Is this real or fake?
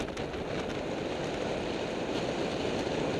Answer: real